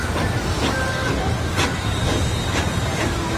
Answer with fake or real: real